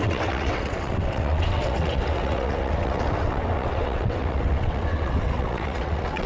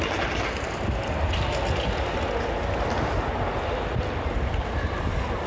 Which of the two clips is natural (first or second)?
second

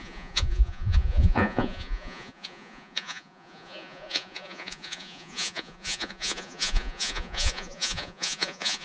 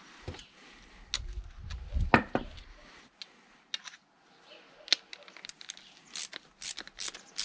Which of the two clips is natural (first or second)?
second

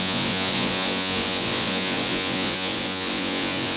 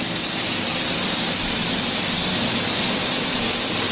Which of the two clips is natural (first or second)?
second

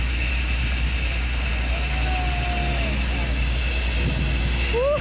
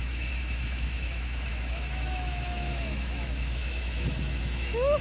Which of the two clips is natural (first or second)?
first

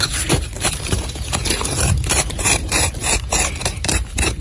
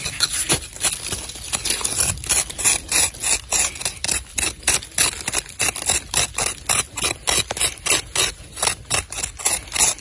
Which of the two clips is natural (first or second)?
second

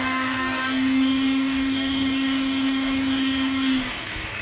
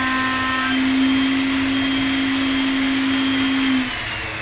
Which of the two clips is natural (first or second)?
second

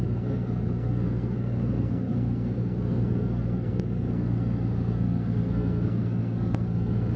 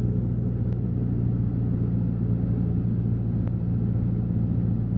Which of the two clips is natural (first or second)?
second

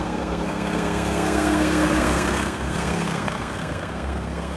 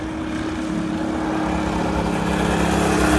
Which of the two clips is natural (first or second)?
second